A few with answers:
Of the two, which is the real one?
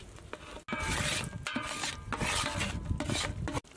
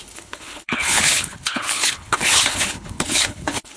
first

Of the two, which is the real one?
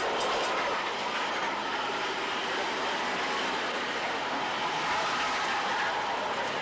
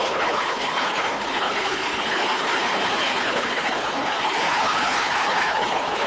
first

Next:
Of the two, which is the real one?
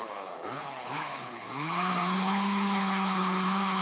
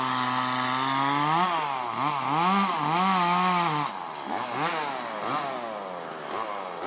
second